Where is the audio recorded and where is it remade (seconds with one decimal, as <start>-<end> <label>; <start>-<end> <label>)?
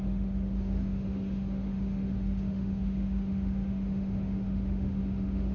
0.0-5.5 remade